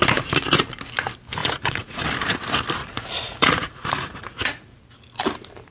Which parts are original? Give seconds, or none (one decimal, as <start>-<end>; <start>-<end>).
0.0-1.4; 2.0-2.8; 4.8-5.7